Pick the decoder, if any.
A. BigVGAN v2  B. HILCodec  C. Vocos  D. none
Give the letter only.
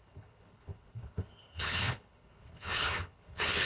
B